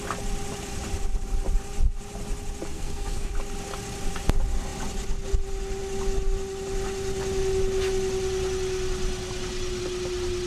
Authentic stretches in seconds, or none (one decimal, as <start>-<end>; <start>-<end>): 0.0-2.7; 3.3-10.5